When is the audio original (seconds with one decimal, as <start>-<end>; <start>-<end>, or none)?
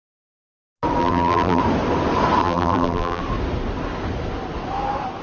0.0-1.0; 1.6-2.4; 3.2-5.2